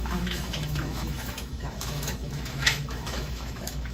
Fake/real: fake